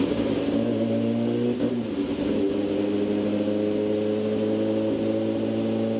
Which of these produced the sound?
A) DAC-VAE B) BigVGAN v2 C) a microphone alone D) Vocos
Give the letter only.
C